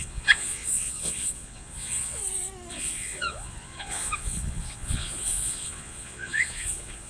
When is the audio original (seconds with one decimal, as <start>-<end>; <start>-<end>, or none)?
2.2-2.7